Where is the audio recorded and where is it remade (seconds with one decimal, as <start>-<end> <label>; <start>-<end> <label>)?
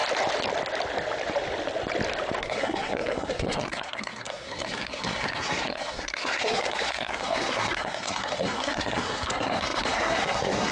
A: 0.0-2.4 recorded; 2.4-10.7 remade